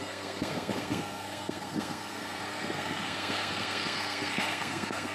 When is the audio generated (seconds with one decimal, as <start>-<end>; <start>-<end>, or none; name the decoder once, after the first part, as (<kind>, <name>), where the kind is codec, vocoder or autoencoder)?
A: 0.0-5.1 (codec, SNAC)